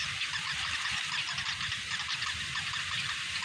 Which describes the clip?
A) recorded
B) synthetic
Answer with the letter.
A